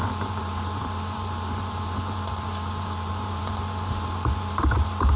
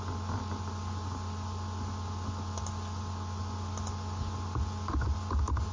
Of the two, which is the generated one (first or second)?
first